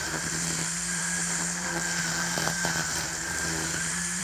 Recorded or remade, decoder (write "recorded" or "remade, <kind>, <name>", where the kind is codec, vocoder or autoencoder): remade, vocoder, BigVGAN v2